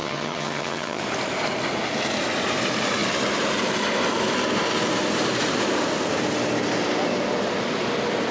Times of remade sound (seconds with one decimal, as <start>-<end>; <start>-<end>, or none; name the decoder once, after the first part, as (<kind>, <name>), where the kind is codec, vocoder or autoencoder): 0.0-1.0 (vocoder, HiFi-GAN)